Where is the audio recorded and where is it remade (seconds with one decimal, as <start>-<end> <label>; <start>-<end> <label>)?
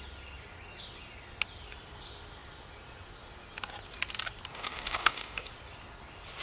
0.0-4.5 recorded; 4.5-5.5 remade; 5.5-6.4 recorded